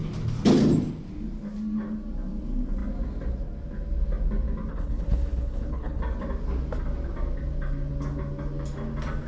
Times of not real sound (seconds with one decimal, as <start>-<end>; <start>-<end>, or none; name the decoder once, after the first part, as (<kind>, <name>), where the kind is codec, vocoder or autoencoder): 4.7-6.0 (codec, HILCodec)